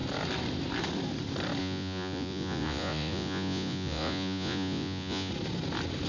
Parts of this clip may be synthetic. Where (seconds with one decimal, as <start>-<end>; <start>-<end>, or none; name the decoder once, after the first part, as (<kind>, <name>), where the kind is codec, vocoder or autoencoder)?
1.6-5.3 (vocoder, Vocos)